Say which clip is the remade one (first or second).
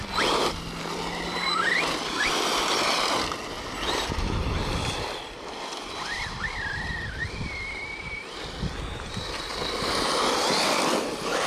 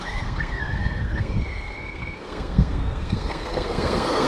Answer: second